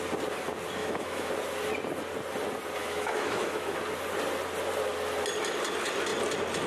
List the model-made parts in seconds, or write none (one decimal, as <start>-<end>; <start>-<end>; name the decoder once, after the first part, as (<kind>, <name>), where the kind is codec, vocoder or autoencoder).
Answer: 0.8-1.3 (autoencoder, DAC-VAE); 2.8-3.8